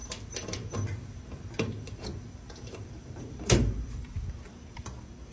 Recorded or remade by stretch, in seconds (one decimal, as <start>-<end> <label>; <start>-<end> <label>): 0.0-5.3 remade